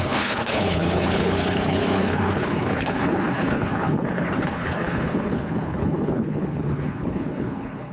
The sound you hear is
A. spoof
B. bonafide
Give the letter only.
A